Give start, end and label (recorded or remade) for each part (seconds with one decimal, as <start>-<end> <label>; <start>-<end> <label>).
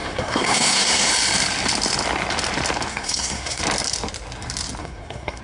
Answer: 0.0-1.1 remade; 1.1-2.9 recorded; 2.9-3.6 remade; 3.6-4.8 recorded; 4.8-5.4 remade